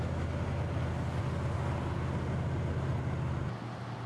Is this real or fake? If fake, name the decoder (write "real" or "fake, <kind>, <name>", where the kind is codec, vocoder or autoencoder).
real